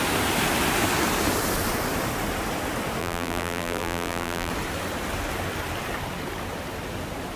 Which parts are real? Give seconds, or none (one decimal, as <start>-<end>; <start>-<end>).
0.0-3.0; 4.5-7.4